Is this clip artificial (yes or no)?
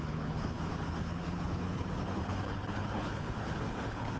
yes